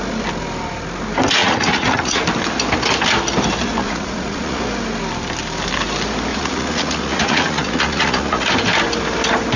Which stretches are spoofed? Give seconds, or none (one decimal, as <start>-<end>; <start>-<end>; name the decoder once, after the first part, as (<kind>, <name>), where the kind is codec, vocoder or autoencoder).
1.4-2.3 (vocoder, Vocos); 3.8-4.6; 6.3-8.5